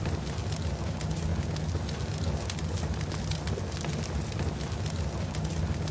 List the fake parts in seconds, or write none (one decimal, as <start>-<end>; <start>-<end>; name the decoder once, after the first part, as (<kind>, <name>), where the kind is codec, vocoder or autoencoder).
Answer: none